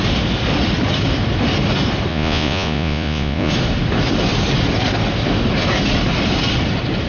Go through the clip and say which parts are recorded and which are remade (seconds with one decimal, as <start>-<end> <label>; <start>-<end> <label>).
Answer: 0.0-2.1 recorded; 2.1-3.5 remade; 3.5-7.1 recorded

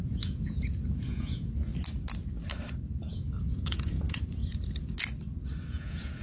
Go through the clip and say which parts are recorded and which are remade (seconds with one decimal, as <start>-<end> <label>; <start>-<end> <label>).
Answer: 0.0-1.7 remade; 1.7-3.1 recorded; 3.1-4.4 remade; 4.4-5.7 recorded; 5.7-6.2 remade

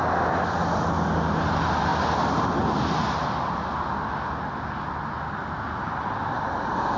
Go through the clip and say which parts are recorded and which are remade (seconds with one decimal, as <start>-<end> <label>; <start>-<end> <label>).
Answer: 0.0-7.0 recorded

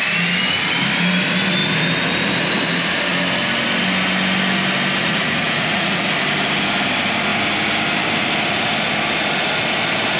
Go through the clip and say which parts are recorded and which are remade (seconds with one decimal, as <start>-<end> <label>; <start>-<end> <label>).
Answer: 0.0-5.0 recorded; 5.0-6.1 remade; 6.1-10.2 recorded

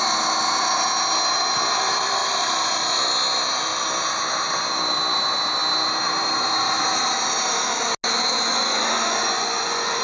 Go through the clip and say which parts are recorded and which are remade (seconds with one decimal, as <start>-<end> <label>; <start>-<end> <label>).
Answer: 0.0-8.5 recorded; 8.5-10.0 remade

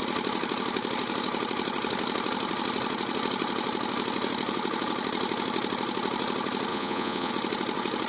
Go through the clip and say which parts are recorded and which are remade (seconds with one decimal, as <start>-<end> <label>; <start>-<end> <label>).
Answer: 0.0-6.7 recorded; 6.7-7.3 remade; 7.3-8.1 recorded